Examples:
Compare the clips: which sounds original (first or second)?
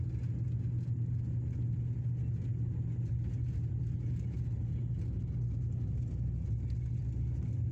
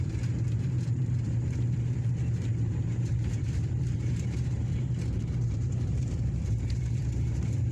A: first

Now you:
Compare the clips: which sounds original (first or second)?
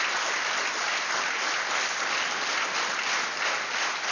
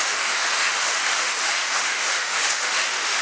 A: first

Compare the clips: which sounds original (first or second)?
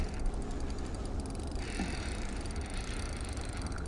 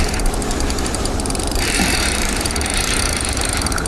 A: first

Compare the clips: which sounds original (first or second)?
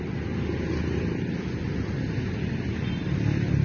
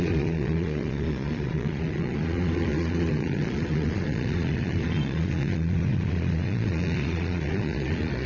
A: first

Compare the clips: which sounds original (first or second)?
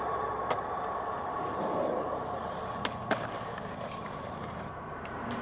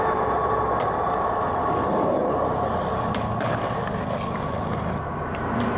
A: second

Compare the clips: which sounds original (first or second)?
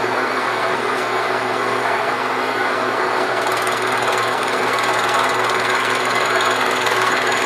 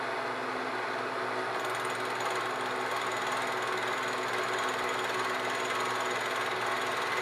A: second